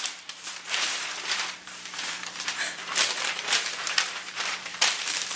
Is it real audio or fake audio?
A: fake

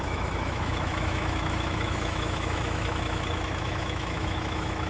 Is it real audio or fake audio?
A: fake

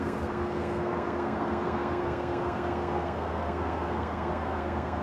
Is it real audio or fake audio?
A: fake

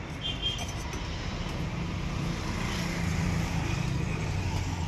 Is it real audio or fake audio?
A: real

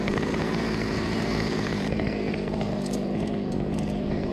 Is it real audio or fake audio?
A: fake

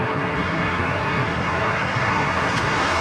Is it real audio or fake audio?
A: fake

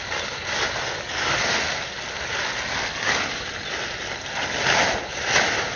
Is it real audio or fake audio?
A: real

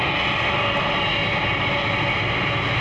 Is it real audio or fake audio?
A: real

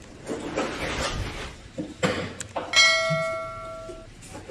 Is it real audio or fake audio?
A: real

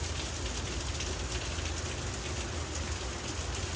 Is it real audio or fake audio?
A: real